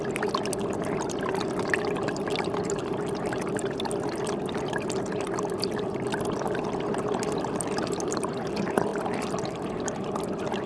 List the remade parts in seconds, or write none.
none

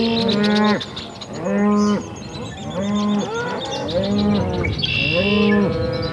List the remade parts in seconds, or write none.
none

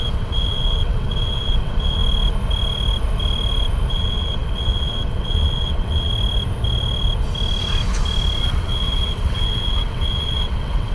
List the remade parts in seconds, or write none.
0.0-2.0 (vocoder, WaveNeXt); 3.9-6.1; 8.4-10.9

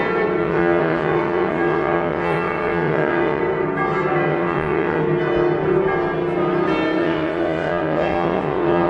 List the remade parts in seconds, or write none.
0.4-3.4 (vocoder, WaveNeXt); 4.3-5.0; 7.0-8.9

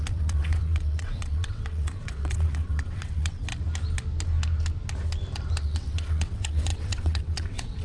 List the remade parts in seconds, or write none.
0.0-3.5 (vocoder, WaveNeXt); 5.6-7.8